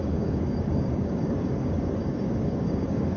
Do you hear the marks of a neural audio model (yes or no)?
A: yes